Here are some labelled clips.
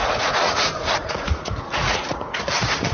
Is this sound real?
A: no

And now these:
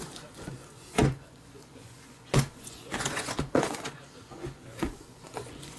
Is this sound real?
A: no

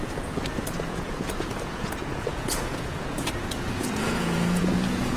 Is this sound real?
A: no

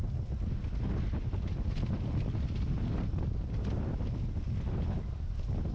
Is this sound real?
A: yes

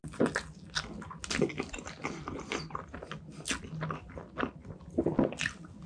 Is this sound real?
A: yes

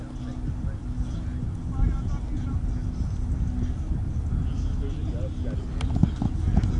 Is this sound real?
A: yes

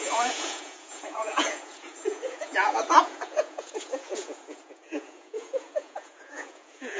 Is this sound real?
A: no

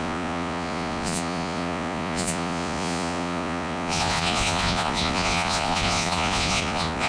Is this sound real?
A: no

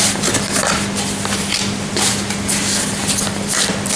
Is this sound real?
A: yes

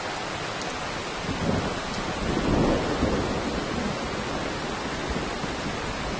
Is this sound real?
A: yes